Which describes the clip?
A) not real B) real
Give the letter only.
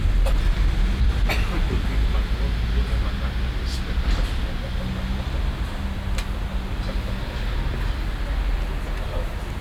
B